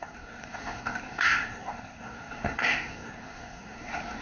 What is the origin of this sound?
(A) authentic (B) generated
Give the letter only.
B